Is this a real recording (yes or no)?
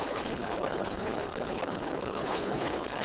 no